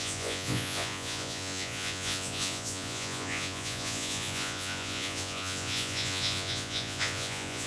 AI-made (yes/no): yes